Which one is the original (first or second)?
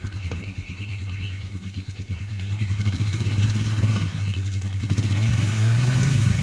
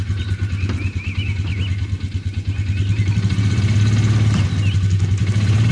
second